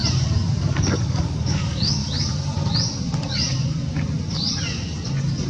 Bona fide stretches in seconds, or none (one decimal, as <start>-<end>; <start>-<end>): 0.0-0.6; 2.0-5.5